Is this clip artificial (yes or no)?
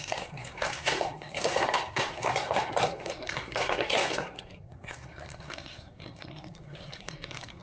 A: yes